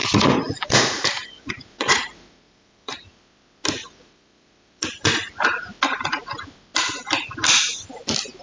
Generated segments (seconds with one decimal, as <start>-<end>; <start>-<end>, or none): 0.0-3.2; 3.8-5.3